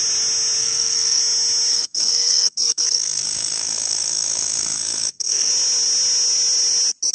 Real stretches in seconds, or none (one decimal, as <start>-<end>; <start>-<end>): 0.0-0.6; 1.2-1.7; 5.5-7.1